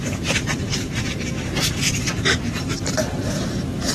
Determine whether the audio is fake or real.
fake